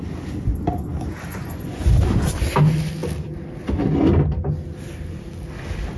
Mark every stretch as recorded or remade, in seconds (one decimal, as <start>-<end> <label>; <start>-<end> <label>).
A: 0.0-1.3 recorded; 1.3-2.0 remade; 2.0-6.0 recorded